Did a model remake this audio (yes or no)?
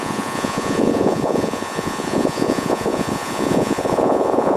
yes